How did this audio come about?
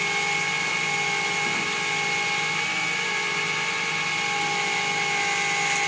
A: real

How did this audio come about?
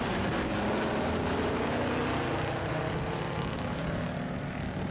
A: real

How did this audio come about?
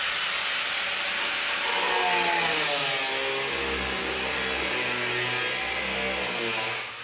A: real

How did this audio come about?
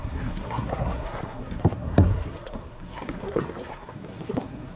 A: fake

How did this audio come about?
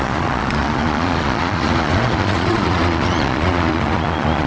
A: fake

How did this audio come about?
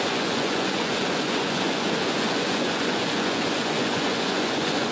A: fake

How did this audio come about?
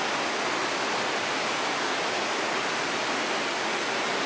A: real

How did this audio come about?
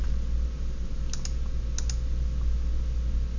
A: real